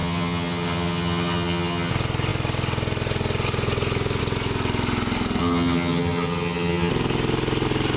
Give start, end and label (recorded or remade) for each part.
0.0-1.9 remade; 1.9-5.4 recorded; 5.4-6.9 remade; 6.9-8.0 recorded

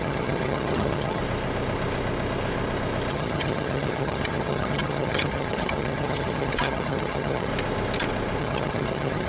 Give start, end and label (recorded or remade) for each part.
0.0-1.2 remade; 1.2-3.1 recorded; 3.1-7.5 remade; 7.5-8.4 recorded; 8.4-9.3 remade

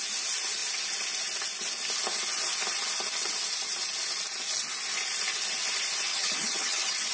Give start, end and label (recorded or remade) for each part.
0.0-6.1 recorded; 6.1-7.1 remade

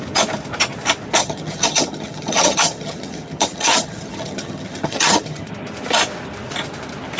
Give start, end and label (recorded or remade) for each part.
0.0-1.2 recorded; 1.2-5.5 remade; 5.5-7.2 recorded

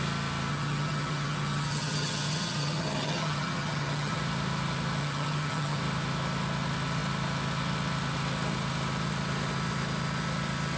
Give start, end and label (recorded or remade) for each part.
0.0-0.5 recorded; 0.5-4.2 remade; 4.2-5.0 recorded; 5.0-5.8 remade; 5.8-10.8 recorded

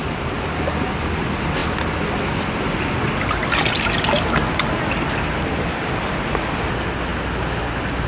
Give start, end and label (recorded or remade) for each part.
0.0-8.1 recorded